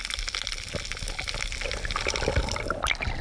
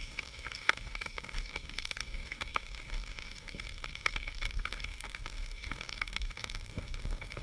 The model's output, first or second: second